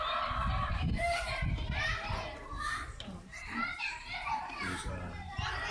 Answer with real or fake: fake